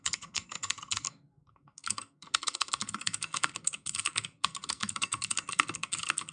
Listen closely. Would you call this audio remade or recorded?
remade